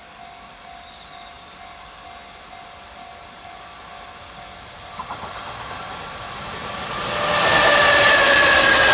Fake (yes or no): no